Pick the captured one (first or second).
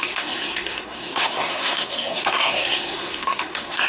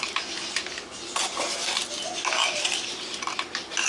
second